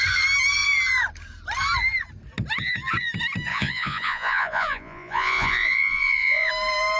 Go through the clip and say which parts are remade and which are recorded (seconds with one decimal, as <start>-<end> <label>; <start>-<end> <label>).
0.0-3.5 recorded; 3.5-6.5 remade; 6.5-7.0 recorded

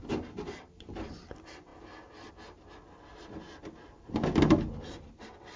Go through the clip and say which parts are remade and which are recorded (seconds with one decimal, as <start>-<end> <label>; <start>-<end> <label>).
0.0-5.6 recorded

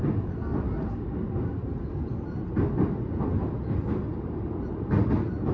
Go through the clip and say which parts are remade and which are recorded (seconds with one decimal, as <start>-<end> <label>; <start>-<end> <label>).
0.0-5.5 recorded

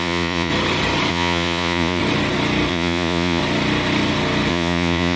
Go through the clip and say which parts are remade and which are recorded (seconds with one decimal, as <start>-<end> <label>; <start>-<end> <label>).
0.0-0.5 remade; 0.5-1.1 recorded; 1.1-2.0 remade; 2.0-2.7 recorded; 2.7-3.4 remade; 3.4-4.5 recorded; 4.5-5.2 remade

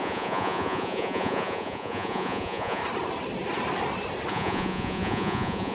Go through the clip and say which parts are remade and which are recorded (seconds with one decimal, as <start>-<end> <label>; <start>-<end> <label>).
0.0-2.8 remade; 2.8-4.3 recorded; 4.3-5.7 remade